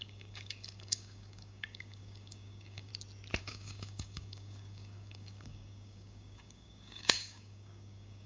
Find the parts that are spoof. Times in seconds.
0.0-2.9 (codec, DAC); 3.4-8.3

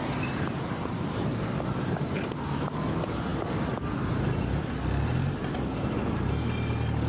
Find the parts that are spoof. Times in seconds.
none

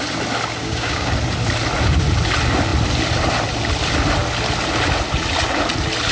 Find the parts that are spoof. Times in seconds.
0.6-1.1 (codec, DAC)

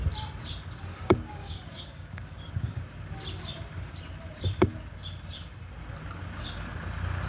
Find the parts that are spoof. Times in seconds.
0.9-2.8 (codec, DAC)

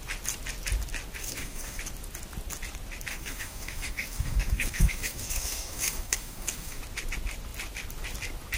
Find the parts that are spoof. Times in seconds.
1.2-1.8 (codec, DAC); 3.1-6.8

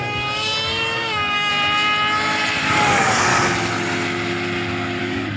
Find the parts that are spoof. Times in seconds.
0.0-1.5 (codec, DAC); 2.6-3.3; 5.0-5.4

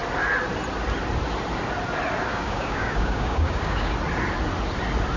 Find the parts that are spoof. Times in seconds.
2.3-3.9 (codec, DAC)

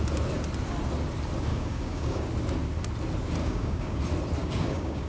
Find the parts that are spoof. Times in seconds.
1.5-2.3 (codec, DAC); 3.4-4.0; 4.4-5.1